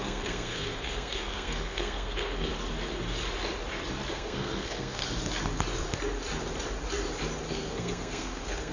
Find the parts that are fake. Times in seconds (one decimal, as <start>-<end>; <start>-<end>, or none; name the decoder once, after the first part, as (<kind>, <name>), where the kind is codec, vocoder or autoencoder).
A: 0.0-2.5 (codec, SNAC); 4.1-5.0; 7.5-8.7

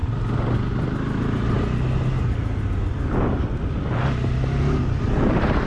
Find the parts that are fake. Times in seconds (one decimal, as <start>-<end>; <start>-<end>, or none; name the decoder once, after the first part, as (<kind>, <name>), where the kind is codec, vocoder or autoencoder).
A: none

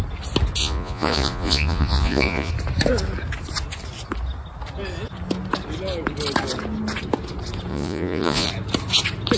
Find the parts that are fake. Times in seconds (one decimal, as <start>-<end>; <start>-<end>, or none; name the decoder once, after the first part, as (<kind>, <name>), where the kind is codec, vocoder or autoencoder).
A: 0.6-2.5 (vocoder, Vocos); 7.7-8.5

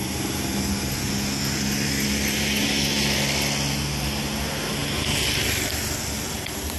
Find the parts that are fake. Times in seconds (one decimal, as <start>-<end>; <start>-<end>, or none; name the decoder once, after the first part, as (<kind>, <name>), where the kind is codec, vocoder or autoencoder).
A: none

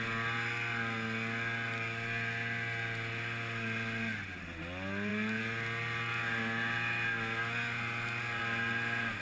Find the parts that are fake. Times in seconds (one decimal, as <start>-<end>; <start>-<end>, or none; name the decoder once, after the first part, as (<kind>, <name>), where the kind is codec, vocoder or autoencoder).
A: none

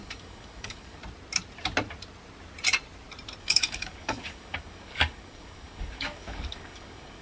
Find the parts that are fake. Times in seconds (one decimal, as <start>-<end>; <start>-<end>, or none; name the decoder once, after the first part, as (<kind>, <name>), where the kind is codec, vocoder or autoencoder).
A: 0.0-1.0 (codec, DAC); 3.4-7.2

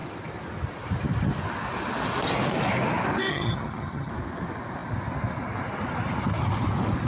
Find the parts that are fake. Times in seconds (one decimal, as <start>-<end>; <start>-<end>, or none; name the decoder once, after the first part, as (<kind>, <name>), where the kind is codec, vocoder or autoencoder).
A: 3.3-4.1 (vocoder, HiFi-GAN)

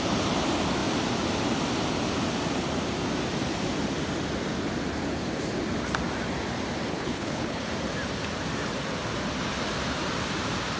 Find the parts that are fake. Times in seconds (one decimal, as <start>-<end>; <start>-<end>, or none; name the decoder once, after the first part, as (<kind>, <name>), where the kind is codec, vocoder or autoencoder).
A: 6.9-7.6 (codec, HILCodec)